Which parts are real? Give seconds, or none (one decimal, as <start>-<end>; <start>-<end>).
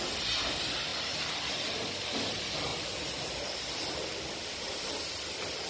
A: 0.0-5.7